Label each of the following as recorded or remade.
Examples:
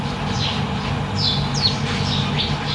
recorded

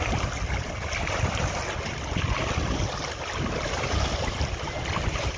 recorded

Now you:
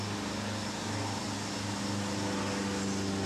recorded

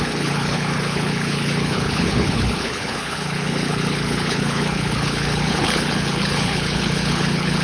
remade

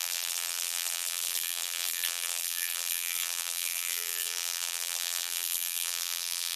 remade